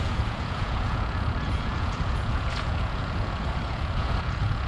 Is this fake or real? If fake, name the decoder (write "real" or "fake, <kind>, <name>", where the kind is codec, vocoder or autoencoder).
fake, vocoder, Vocos